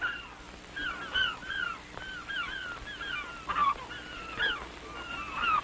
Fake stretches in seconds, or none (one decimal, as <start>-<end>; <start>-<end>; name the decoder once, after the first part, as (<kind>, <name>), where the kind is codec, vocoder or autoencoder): none